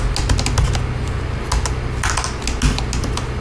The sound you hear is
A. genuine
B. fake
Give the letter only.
A